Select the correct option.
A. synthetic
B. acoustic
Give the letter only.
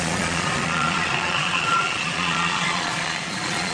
A